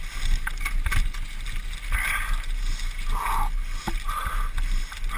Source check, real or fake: real